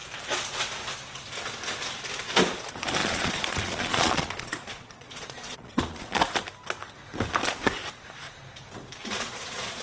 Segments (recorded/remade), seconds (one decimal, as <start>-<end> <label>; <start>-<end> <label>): 0.0-3.0 recorded; 3.0-6.2 remade; 6.2-9.0 recorded; 9.0-9.8 remade